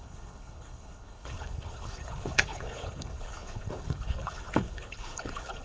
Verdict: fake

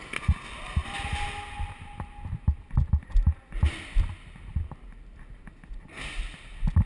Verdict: real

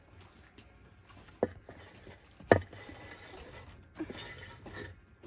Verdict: real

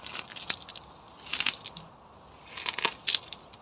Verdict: real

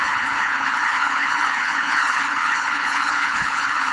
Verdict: fake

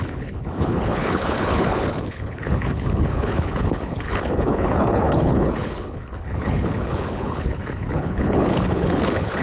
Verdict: fake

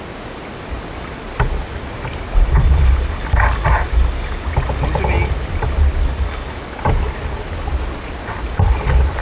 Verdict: real